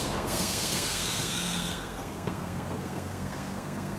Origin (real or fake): fake